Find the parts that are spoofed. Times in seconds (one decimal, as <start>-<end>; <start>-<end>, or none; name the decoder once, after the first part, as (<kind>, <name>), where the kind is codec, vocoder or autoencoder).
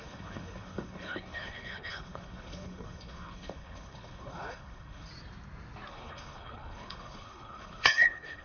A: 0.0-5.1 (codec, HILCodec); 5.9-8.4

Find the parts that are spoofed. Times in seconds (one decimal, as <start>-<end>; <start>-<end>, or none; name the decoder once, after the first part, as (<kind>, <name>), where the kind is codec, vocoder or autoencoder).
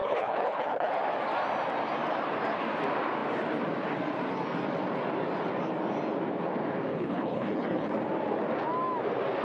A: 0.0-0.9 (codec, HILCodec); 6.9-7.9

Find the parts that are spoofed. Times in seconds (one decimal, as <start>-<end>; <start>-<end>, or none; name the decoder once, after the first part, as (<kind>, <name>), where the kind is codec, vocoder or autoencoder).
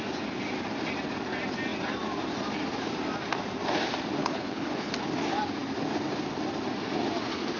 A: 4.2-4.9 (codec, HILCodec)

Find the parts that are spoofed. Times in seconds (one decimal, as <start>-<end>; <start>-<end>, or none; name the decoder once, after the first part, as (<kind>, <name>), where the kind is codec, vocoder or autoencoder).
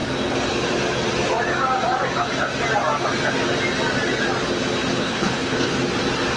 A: 4.9-5.7 (codec, HILCodec)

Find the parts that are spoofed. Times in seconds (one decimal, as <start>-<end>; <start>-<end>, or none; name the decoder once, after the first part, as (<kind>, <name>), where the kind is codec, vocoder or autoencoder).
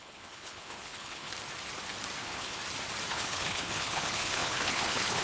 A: 0.0-1.3 (codec, HILCodec); 2.2-2.6; 3.1-5.2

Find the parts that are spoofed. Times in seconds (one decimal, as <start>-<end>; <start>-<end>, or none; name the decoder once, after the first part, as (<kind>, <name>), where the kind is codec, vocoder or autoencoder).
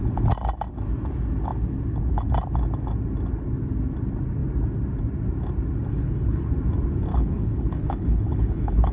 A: 5.9-6.5 (codec, HILCodec); 7.1-8.9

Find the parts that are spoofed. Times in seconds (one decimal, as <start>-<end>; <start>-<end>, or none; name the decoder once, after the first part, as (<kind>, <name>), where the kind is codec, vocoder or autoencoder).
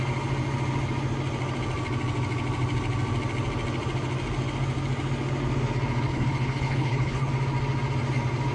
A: 6.1-7.3 (codec, HILCodec)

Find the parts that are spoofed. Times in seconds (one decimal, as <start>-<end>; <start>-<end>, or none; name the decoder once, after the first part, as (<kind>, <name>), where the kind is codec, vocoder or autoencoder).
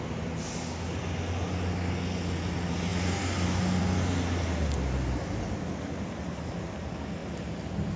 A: none